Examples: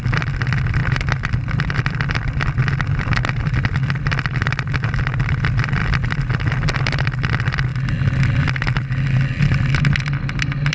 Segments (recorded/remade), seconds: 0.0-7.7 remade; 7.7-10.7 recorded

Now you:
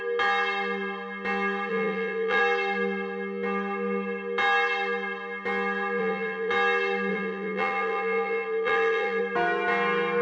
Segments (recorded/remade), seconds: 0.0-1.7 recorded; 1.7-2.4 remade; 2.4-6.0 recorded; 6.0-6.5 remade; 6.5-7.1 recorded; 7.1-9.2 remade; 9.2-10.2 recorded

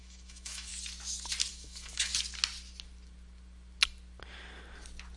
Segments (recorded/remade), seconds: 0.0-0.7 remade; 0.7-1.5 recorded; 1.5-2.1 remade; 2.1-5.2 recorded

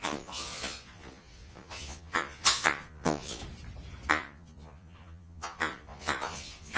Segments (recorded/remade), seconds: 0.0-3.4 remade; 3.4-4.1 recorded; 4.1-6.8 remade

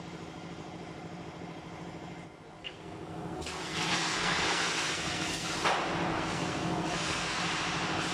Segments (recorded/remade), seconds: 0.0-2.6 recorded; 2.6-5.5 remade; 5.5-6.1 recorded; 6.1-7.4 remade; 7.4-8.1 recorded

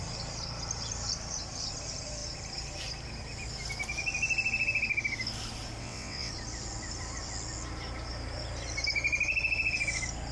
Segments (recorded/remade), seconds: 0.0-5.8 recorded; 5.8-6.3 remade; 6.3-10.3 recorded